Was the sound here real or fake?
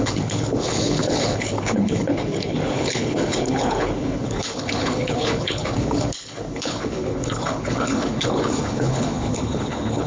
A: fake